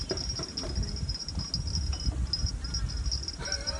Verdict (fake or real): real